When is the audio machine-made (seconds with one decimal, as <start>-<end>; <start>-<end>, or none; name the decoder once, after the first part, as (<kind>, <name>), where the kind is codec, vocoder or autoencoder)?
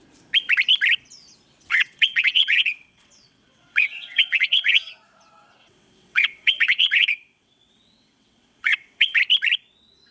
1.7-4.9 (vocoder, WaveNeXt); 5.6-9.2